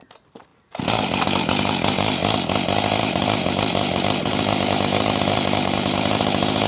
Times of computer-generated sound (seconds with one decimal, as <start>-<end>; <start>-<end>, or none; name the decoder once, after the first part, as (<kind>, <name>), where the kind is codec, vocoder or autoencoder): 0.0-2.2 (vocoder, BigVGAN v2); 3.0-6.7